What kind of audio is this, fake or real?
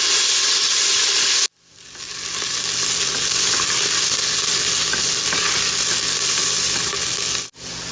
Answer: real